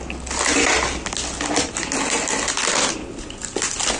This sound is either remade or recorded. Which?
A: recorded